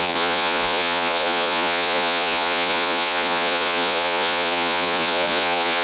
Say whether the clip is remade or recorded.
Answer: remade